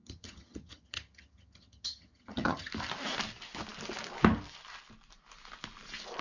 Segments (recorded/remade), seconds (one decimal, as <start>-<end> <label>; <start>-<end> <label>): 0.0-2.7 remade; 2.7-6.2 recorded